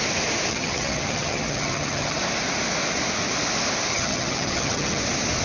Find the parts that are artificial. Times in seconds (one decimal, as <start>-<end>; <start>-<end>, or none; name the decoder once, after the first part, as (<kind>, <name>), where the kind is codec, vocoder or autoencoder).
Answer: 0.5-2.2 (vocoder, HiFi-GAN); 3.9-5.0